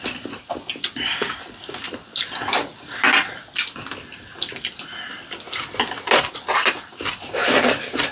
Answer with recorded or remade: recorded